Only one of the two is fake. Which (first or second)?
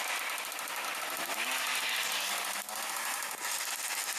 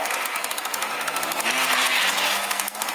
second